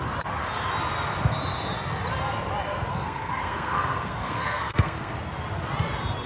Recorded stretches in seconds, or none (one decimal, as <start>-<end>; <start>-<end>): 0.0-2.9; 5.1-6.3